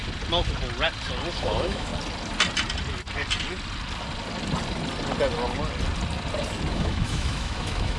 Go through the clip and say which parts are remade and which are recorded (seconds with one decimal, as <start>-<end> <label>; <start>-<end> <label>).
0.0-1.4 recorded; 1.4-1.9 remade; 1.9-6.7 recorded; 6.7-8.0 remade

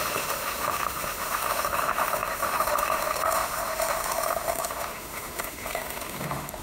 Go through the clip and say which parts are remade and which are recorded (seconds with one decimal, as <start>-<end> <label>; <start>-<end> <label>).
0.0-6.6 remade

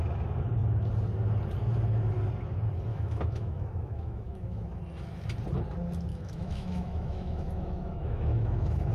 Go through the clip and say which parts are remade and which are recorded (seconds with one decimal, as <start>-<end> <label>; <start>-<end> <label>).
0.0-2.9 recorded; 2.9-4.8 remade; 4.8-6.1 recorded; 6.1-8.9 remade

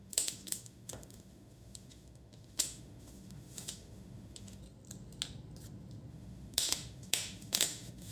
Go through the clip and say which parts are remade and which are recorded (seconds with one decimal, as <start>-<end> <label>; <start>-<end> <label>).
0.0-4.6 remade; 4.6-6.1 recorded; 6.1-8.1 remade